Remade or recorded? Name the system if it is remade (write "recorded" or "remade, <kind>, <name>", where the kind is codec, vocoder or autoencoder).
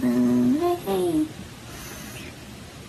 recorded